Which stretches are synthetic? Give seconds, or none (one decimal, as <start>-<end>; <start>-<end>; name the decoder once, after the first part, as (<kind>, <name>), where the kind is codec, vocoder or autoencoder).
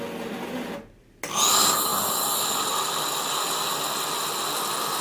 none